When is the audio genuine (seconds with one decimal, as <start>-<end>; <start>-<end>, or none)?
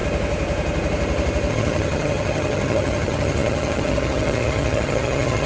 0.0-1.5